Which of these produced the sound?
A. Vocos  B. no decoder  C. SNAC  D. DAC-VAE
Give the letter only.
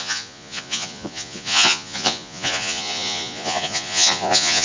A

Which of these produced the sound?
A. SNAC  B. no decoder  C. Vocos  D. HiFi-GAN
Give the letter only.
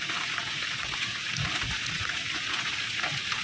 C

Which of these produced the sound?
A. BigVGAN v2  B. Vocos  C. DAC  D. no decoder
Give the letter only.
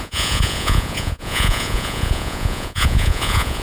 B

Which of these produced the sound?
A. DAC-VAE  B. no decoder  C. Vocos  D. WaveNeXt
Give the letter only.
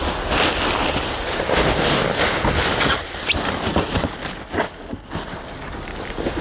B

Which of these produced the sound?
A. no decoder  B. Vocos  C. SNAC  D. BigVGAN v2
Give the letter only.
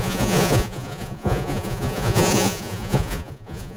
B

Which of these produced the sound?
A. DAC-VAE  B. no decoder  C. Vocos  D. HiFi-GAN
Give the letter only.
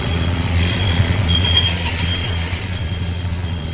C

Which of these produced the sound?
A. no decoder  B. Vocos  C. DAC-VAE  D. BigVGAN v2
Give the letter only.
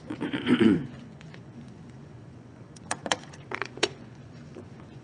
B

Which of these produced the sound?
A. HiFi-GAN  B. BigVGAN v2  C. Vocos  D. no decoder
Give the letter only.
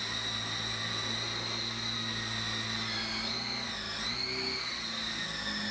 D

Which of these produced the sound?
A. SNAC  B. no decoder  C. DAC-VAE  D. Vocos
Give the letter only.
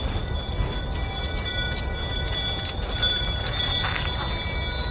B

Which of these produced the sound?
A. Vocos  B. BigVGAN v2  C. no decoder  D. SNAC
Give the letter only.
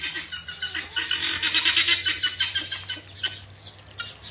C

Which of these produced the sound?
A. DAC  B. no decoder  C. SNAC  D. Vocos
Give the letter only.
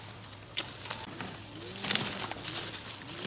B